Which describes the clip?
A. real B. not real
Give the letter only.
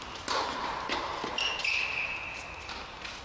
A